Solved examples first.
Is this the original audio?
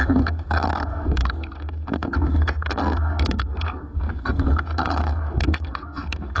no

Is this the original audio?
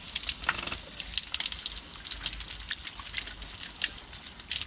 yes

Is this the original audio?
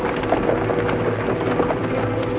yes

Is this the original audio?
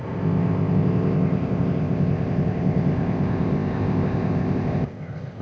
no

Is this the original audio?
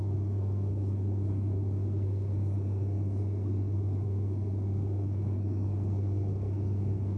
no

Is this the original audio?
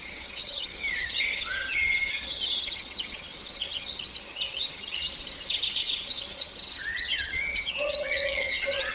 no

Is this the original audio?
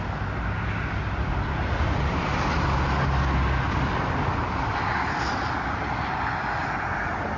yes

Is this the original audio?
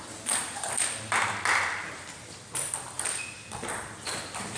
yes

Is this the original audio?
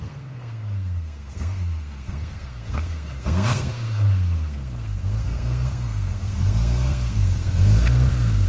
no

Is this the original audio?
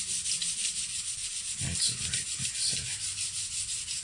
yes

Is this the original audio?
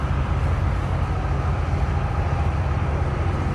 yes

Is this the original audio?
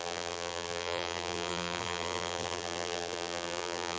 no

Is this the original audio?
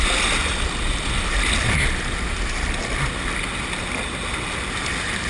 yes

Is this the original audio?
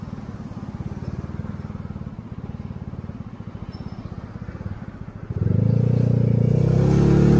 yes